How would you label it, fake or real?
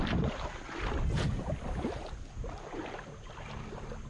real